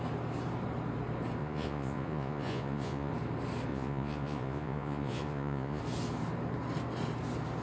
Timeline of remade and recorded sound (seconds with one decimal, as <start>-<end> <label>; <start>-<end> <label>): 0.0-1.4 recorded; 1.4-3.1 remade; 3.1-3.7 recorded; 3.7-5.8 remade; 5.8-7.6 recorded

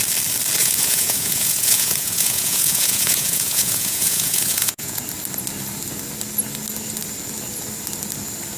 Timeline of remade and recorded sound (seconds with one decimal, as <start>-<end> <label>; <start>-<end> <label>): 0.0-0.6 recorded; 0.6-5.0 remade; 5.0-8.6 recorded

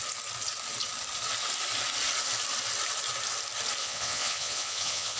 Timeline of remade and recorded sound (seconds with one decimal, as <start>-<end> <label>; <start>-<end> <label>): 0.0-3.8 recorded; 3.8-5.2 remade

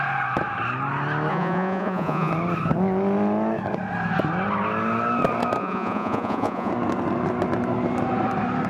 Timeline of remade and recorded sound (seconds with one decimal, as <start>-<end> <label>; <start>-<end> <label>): 0.0-1.3 recorded; 1.3-2.3 remade; 2.3-5.6 recorded; 5.6-6.7 remade; 6.7-8.7 recorded

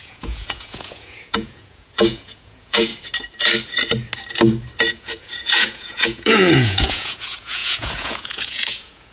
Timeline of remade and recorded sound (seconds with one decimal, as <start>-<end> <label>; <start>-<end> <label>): 0.0-2.9 remade; 2.9-4.9 recorded; 4.9-9.1 remade

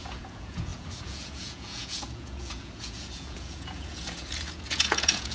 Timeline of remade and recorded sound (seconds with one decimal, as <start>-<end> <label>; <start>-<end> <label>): 0.0-5.3 remade